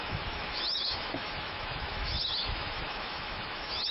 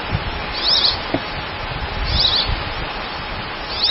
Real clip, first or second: second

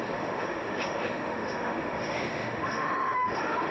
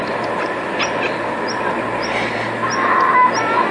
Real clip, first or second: second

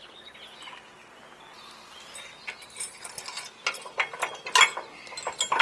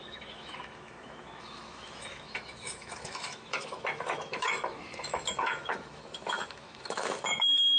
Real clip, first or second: first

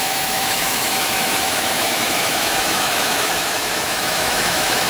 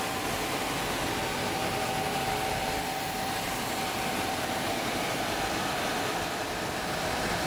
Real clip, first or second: second